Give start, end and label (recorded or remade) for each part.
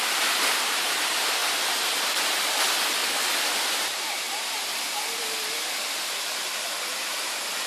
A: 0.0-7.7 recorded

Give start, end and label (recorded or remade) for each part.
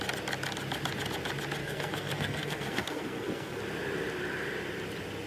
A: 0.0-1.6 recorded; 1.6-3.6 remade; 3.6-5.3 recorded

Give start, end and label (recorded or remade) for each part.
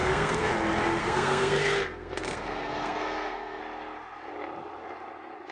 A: 0.0-0.5 remade; 0.5-1.0 recorded; 1.0-3.6 remade; 3.6-5.5 recorded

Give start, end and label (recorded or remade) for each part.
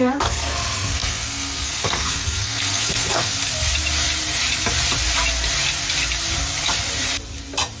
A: 0.0-3.3 remade; 3.3-7.8 recorded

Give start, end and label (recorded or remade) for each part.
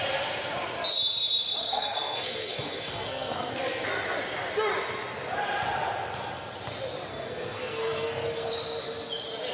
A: 0.0-1.6 recorded; 1.6-3.5 remade; 3.5-7.1 recorded; 7.1-8.5 remade; 8.5-9.5 recorded